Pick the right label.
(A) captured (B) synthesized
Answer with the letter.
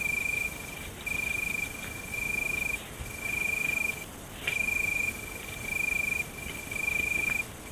B